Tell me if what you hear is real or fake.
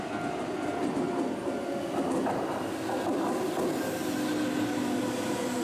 real